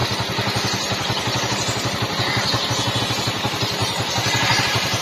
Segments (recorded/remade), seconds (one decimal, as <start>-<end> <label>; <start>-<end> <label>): 0.0-3.0 recorded; 3.0-5.0 remade